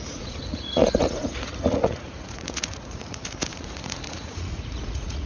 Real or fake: fake